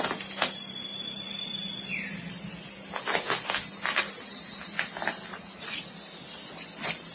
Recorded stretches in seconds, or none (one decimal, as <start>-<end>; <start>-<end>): 0.0-5.3; 5.8-7.1